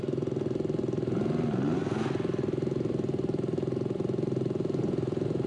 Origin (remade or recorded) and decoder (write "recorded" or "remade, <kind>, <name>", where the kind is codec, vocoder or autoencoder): recorded